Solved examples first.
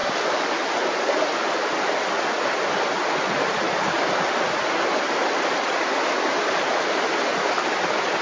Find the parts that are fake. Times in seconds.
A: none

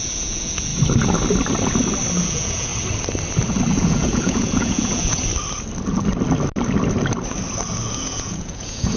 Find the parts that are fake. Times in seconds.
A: 0.0-0.7 (vocoder, Vocos); 2.2-2.7; 3.7-5.2; 8.0-9.0

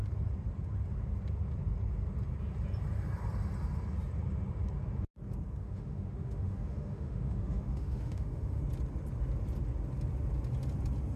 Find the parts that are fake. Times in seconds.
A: 5.6-8.6 (autoencoder, DAC-VAE)

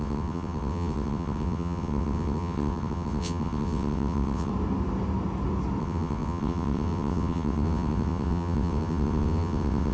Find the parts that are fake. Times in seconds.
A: 0.0-4.5 (vocoder, WaveNeXt); 5.8-9.9